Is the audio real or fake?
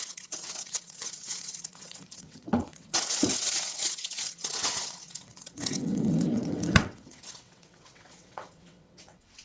fake